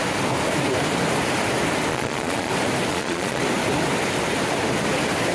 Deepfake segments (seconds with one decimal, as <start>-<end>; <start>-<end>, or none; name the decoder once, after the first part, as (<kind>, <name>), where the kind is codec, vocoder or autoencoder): 1.9-2.5 (vocoder, Vocos); 2.9-3.4